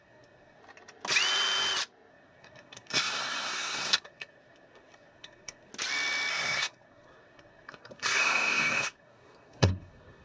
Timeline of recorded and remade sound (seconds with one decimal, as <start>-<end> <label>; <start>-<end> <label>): 0.0-0.6 remade; 0.6-2.1 recorded; 2.1-5.7 remade; 5.7-6.3 recorded; 6.3-10.2 remade